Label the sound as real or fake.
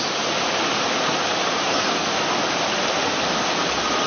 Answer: real